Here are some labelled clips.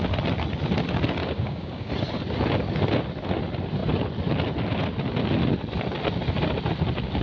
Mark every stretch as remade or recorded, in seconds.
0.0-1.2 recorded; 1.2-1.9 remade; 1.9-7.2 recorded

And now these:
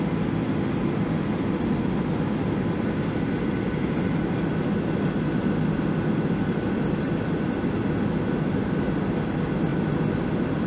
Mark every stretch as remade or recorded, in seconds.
0.0-10.7 recorded

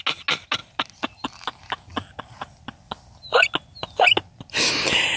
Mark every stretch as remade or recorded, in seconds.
0.0-5.2 recorded